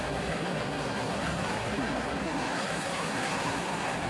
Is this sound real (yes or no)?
no